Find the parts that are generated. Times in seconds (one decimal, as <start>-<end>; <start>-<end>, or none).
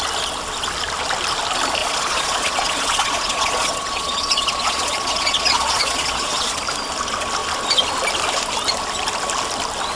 1.8-6.6